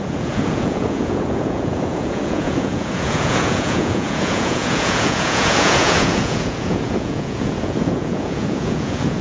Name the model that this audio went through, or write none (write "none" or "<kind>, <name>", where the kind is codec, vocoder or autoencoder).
vocoder, Vocos